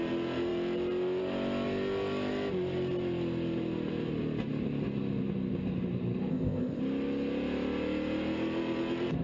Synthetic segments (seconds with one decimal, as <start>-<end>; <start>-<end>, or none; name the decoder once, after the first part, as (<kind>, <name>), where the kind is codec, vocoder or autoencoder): 6.3-6.8 (codec, ZipCodec)